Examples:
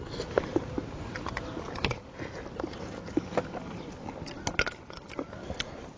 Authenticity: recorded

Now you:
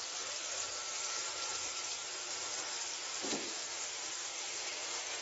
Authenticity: recorded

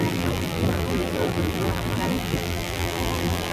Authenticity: remade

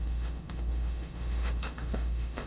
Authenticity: remade